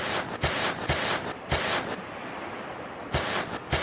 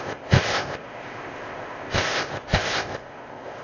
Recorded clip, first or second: first